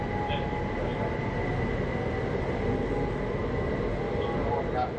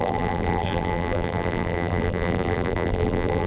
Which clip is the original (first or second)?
first